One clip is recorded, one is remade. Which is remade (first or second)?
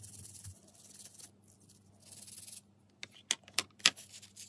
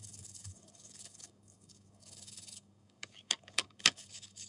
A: second